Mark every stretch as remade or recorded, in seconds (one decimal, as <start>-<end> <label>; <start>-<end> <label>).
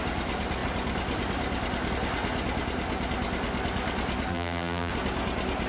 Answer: 0.0-4.3 recorded; 4.3-4.9 remade; 4.9-5.7 recorded